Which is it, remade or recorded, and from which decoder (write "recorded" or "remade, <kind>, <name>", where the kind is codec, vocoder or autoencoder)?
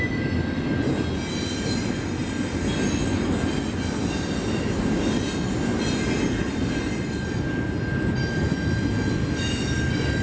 recorded